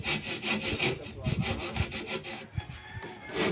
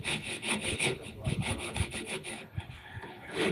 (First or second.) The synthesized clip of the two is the second